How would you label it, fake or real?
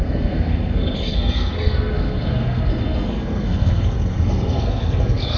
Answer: fake